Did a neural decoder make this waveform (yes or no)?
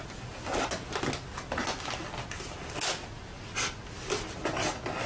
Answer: no